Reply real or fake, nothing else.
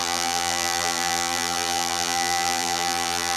fake